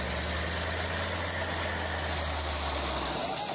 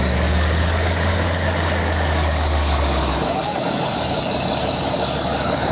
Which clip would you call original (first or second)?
first